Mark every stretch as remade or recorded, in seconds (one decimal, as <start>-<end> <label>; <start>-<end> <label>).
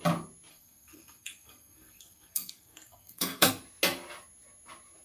0.0-0.5 recorded; 0.5-3.5 remade; 3.5-5.0 recorded